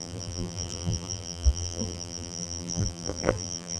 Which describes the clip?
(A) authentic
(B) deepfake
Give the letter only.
B